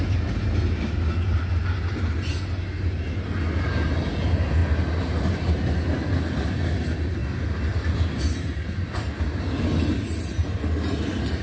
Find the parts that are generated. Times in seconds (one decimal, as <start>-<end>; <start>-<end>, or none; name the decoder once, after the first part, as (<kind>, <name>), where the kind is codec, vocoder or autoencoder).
none